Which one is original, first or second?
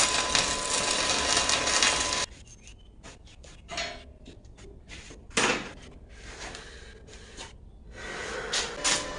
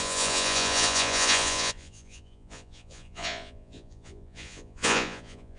first